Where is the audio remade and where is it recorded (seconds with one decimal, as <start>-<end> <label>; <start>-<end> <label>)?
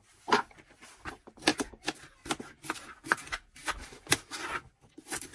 0.0-5.3 recorded